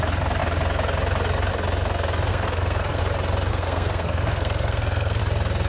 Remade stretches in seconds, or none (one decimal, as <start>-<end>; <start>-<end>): 2.3-3.0; 3.5-5.2